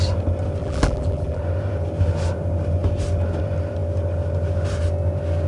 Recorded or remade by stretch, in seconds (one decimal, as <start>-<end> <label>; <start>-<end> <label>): 0.0-0.6 recorded; 0.6-1.4 remade; 1.4-5.5 recorded